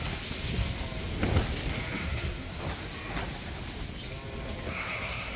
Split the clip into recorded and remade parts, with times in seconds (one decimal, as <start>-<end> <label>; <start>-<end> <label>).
0.0-2.0 recorded; 2.0-2.6 remade; 2.6-4.7 recorded; 4.7-5.4 remade